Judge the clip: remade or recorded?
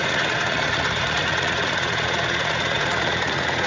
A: remade